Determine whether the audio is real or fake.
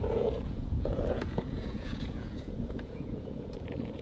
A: fake